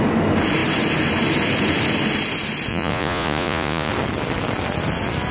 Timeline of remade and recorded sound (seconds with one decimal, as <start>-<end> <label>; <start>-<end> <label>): 0.0-2.7 recorded; 2.7-3.9 remade; 3.9-5.3 recorded